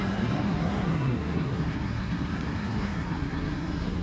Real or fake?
fake